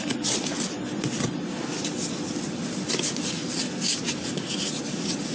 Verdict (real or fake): real